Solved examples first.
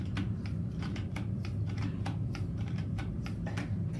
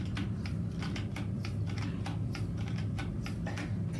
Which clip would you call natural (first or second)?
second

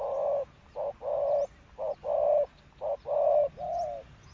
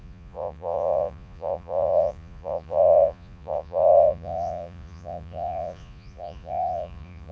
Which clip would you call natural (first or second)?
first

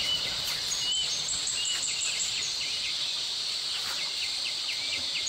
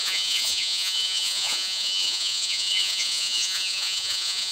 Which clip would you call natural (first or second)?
first